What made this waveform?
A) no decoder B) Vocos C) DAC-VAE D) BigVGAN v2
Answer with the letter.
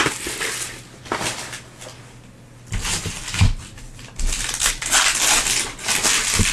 A